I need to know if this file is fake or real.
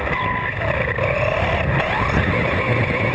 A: real